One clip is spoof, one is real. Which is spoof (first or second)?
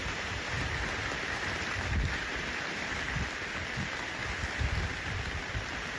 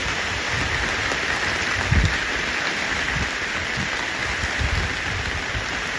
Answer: first